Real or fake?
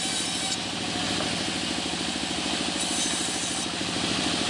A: real